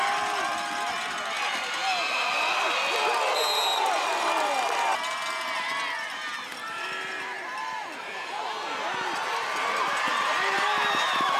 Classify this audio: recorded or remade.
recorded